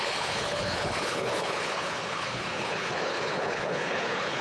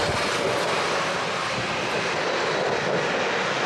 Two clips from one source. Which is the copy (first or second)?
first